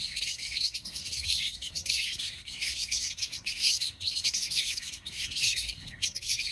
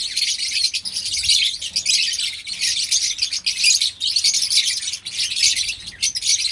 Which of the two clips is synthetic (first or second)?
first